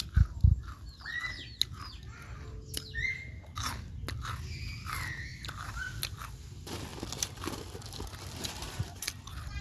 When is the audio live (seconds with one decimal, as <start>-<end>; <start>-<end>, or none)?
0.0-5.3; 6.2-6.9